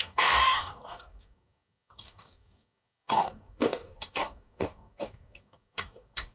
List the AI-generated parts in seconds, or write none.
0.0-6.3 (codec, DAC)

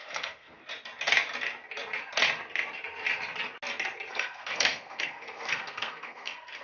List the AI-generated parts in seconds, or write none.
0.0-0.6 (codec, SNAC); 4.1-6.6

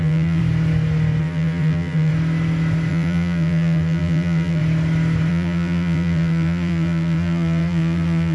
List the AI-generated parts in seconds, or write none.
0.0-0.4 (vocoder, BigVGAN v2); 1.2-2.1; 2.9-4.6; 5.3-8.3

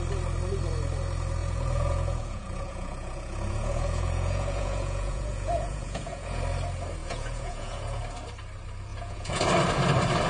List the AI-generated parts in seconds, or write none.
1.4-6.4 (vocoder, Vocos); 7.0-8.0; 8.9-9.4